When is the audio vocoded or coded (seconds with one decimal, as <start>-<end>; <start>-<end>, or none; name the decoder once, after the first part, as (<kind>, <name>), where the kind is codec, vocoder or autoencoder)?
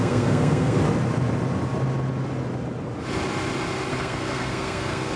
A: 0.0-0.8 (codec, SNAC); 3.9-5.2